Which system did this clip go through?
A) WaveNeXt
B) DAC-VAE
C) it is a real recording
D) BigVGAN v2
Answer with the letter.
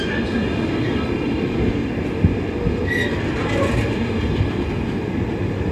C